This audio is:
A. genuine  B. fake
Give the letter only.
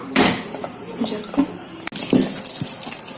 A